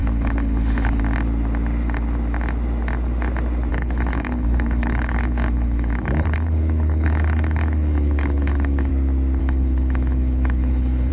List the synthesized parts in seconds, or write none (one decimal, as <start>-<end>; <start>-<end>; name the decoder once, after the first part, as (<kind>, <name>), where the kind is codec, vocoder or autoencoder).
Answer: 0.0-1.0 (codec, HILCodec); 3.7-8.9; 9.4-11.1